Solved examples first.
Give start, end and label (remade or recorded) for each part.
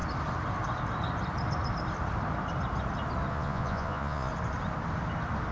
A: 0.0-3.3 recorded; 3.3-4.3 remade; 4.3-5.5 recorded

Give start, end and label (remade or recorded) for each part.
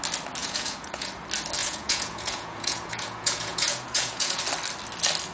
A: 0.0-0.4 recorded; 0.4-1.1 remade; 1.1-1.6 recorded; 1.6-4.4 remade; 4.4-5.3 recorded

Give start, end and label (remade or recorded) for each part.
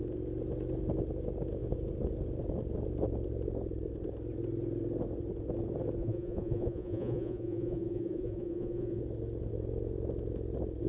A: 0.0-6.0 recorded; 6.0-9.0 remade; 9.0-10.9 recorded